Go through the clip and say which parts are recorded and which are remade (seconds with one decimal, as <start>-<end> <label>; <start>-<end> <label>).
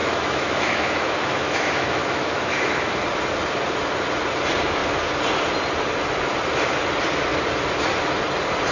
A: 0.0-2.9 remade; 2.9-8.7 recorded